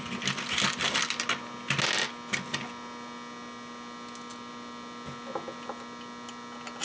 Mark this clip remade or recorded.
recorded